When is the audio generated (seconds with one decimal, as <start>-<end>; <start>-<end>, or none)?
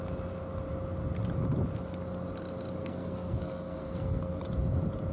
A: 2.8-4.4